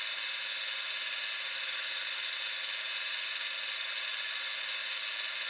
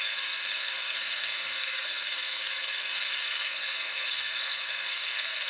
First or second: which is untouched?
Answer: first